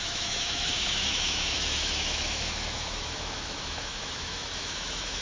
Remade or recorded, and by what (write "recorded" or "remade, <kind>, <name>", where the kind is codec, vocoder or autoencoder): remade, autoencoder, DAC-VAE